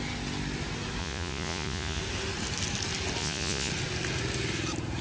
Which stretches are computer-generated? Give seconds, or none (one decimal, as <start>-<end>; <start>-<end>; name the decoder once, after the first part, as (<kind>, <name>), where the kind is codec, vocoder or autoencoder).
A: 1.0-2.0 (vocoder, Vocos); 3.2-3.7